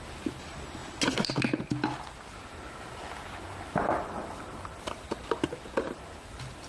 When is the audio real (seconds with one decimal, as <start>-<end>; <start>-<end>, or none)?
0.0-6.7